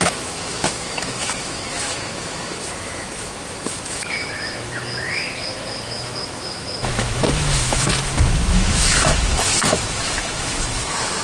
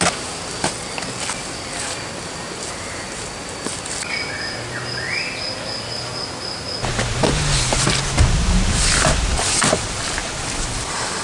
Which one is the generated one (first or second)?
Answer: first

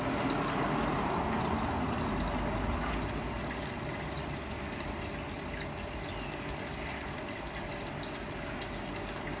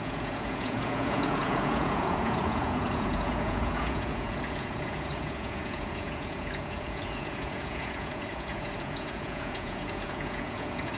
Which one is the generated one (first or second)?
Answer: second